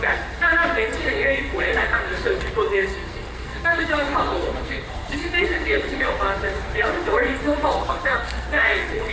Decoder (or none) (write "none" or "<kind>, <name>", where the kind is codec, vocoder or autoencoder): codec, SNAC